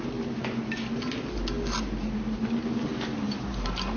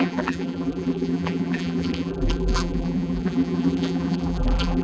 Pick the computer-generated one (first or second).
second